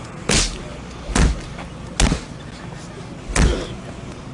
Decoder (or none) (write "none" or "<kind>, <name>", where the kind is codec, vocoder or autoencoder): none